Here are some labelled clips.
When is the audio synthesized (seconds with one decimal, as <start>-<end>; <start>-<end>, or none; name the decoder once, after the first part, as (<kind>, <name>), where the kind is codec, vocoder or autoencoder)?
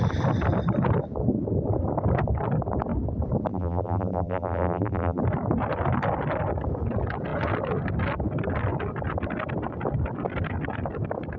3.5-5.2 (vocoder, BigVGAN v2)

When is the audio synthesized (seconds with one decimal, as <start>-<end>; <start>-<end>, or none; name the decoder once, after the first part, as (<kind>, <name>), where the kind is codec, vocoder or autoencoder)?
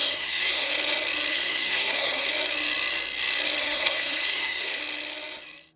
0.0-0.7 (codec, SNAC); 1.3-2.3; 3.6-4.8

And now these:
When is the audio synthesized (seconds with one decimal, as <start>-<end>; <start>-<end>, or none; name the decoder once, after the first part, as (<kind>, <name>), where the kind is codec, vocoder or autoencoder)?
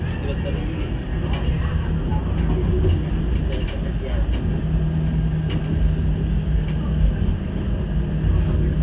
none